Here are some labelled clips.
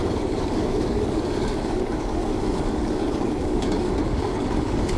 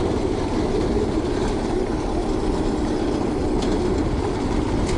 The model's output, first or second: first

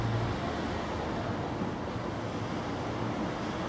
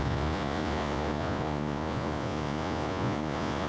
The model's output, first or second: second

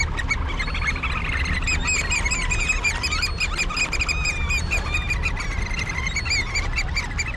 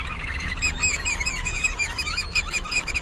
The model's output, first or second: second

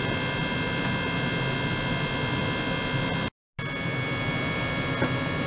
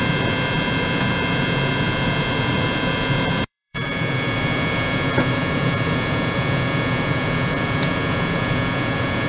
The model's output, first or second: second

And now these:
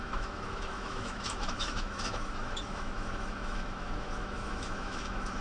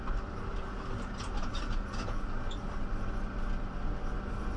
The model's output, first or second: first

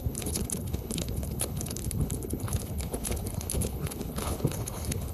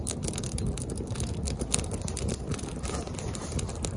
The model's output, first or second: first